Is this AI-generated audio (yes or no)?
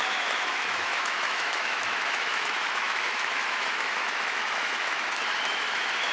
yes